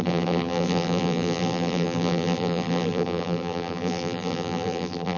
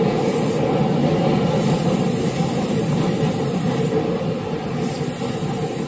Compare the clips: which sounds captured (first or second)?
second